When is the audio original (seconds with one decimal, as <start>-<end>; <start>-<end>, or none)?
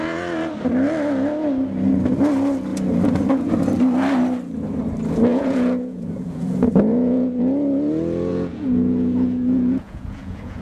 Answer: 0.0-5.3; 7.4-8.3